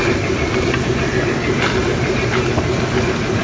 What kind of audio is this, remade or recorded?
recorded